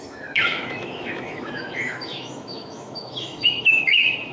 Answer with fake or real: fake